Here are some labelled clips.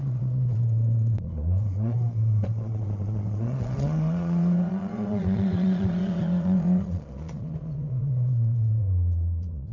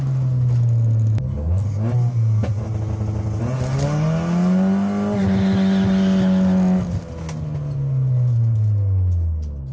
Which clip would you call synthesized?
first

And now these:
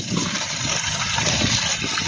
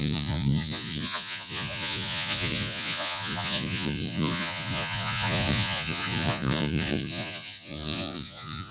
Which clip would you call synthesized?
second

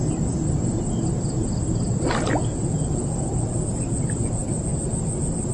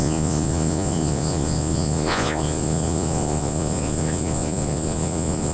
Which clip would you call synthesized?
second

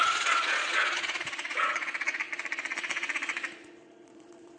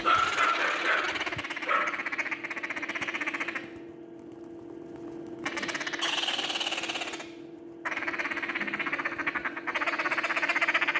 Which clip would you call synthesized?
first